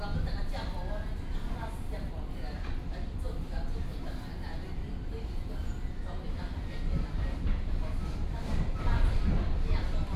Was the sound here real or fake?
real